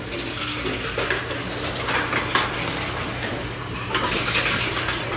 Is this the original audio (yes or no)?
yes